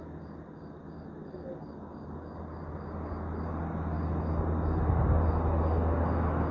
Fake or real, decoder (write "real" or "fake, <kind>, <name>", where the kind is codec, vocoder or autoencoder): real